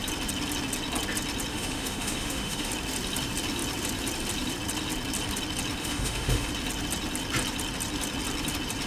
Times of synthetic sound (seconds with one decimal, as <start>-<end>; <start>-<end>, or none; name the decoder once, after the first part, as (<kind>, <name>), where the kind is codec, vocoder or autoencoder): 1.5-2.7 (autoencoder, DAC-VAE); 5.8-6.5